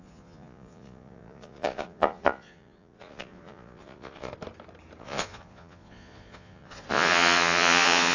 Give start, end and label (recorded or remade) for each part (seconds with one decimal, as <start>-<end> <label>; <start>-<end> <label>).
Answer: 0.0-4.3 remade; 4.3-5.0 recorded; 5.0-8.1 remade